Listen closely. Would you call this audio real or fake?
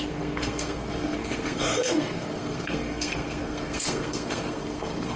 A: fake